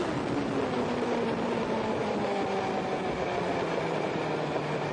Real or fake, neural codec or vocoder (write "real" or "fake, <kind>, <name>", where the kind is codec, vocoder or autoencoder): real